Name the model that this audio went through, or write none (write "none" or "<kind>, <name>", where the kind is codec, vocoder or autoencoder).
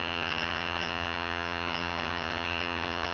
vocoder, HiFi-GAN